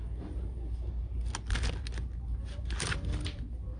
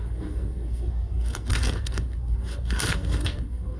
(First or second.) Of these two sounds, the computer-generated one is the second